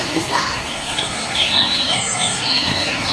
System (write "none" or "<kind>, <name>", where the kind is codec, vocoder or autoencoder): codec, SNAC